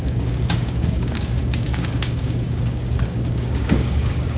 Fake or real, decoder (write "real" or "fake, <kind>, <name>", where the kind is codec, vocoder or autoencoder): fake, codec, DAC